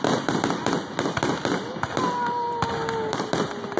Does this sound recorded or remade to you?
recorded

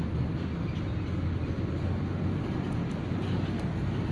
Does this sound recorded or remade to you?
recorded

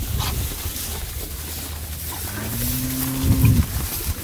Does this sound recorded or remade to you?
recorded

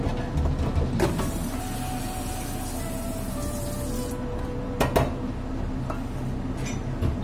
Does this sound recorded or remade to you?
recorded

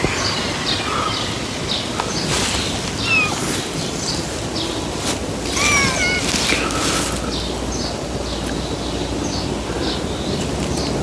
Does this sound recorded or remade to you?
recorded